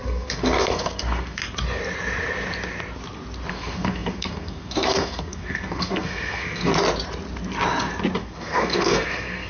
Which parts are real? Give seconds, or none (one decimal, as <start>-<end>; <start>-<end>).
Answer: 1.4-3.5; 6.7-8.2